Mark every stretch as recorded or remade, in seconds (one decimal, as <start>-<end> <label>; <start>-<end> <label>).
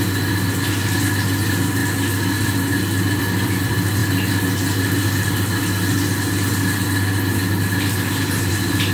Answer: 0.0-8.9 recorded